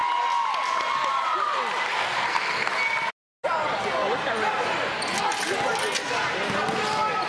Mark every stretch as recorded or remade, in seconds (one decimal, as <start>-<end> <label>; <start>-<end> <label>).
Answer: 0.0-1.9 recorded; 1.9-2.7 remade; 2.7-7.3 recorded